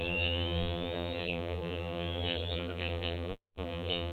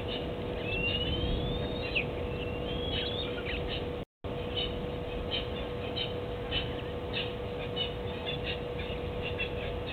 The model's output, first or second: first